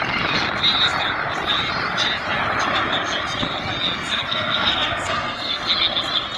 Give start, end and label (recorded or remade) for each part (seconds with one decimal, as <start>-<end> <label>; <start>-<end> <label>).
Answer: 0.0-4.1 recorded; 4.1-5.6 remade; 5.6-6.4 recorded